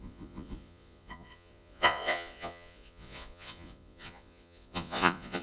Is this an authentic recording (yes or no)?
no